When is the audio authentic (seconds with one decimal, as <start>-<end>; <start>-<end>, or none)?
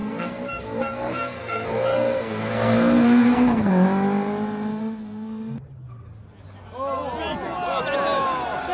3.7-4.7; 5.6-8.7